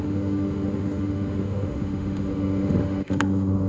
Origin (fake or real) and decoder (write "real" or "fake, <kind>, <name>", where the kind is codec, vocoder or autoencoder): fake, autoencoder, DAC-VAE